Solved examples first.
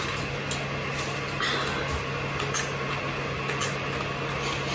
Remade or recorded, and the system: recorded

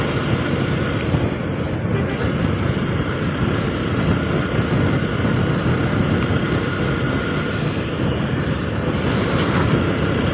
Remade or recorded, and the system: recorded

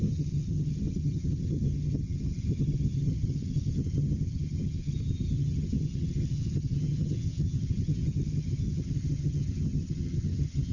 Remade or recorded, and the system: remade, vocoder, HiFi-GAN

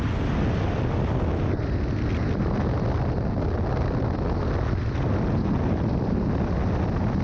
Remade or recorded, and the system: recorded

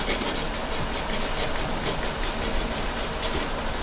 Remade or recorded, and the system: recorded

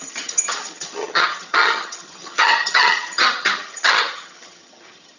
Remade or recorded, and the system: remade, vocoder, HiFi-GAN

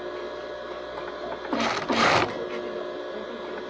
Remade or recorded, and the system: recorded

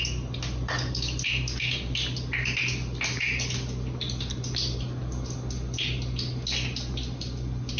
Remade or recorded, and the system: recorded